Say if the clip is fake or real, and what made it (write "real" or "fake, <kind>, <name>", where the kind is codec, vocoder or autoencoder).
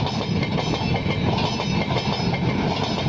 real